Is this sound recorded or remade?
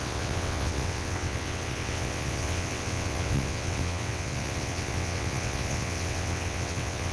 remade